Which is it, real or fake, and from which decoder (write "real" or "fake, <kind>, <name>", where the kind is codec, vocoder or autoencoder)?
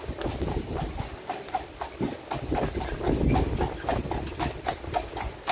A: real